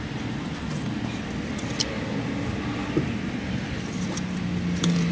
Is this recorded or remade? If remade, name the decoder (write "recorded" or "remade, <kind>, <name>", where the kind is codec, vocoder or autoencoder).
recorded